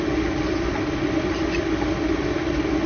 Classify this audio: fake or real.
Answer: real